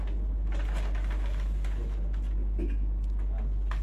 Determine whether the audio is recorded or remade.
recorded